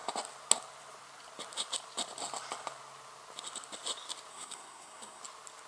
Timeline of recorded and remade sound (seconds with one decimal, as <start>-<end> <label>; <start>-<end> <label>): 0.0-4.3 recorded; 4.3-5.2 remade; 5.2-5.7 recorded